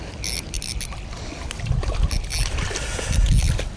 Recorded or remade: recorded